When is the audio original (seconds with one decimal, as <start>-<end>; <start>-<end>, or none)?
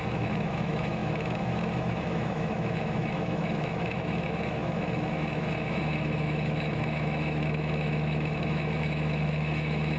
none